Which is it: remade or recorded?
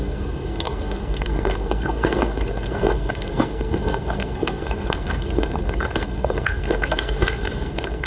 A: remade